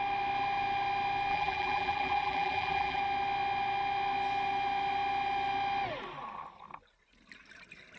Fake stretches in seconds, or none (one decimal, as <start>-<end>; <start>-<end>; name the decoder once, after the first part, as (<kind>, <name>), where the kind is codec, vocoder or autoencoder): 1.3-3.0 (vocoder, BigVGAN v2)